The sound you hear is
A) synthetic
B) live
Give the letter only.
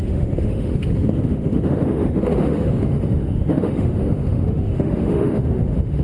A